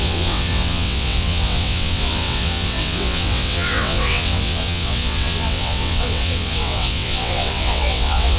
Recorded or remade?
remade